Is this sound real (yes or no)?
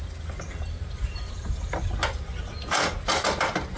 yes